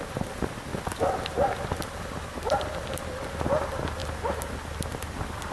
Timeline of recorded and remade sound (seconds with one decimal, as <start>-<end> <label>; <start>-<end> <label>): 0.0-4.0 remade; 4.0-5.5 recorded